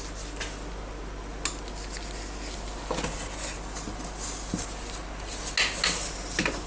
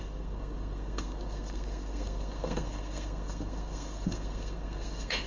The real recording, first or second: first